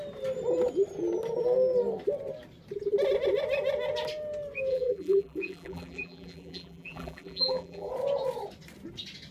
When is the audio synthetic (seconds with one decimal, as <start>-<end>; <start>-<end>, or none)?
4.7-7.9